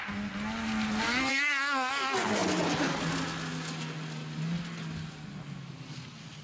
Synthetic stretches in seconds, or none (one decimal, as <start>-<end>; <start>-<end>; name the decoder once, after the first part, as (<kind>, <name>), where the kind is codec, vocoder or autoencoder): 1.3-1.9 (codec, SNAC)